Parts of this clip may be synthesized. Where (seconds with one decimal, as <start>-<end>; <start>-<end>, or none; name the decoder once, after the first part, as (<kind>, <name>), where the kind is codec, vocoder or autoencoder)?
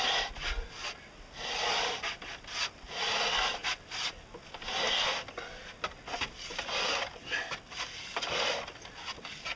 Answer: none